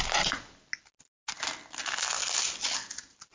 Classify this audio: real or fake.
real